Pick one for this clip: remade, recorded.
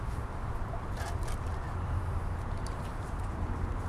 remade